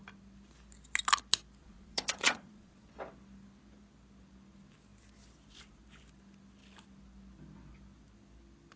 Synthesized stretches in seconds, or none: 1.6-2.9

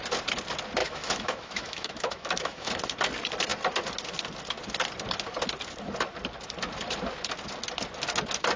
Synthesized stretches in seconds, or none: 0.8-2.7

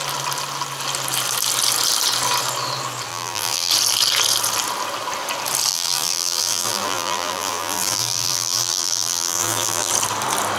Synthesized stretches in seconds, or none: 3.1-3.7; 5.7-9.9

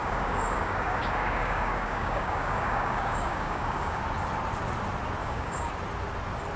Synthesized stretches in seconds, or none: 0.0-4.0; 5.2-5.7

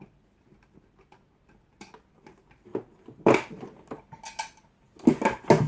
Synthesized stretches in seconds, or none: none

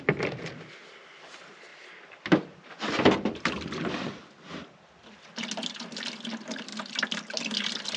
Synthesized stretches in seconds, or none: none

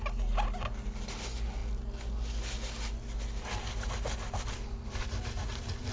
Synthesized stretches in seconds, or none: none

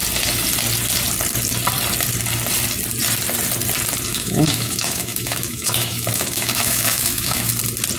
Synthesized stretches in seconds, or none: 4.1-7.5